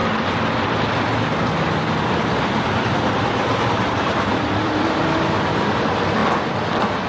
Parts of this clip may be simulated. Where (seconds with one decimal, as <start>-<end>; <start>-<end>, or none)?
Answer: 2.4-5.0; 5.6-6.2